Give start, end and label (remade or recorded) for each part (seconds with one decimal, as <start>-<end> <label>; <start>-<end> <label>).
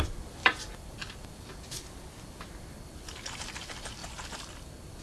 0.0-0.4 recorded; 0.4-1.5 remade; 1.5-4.0 recorded; 4.0-5.0 remade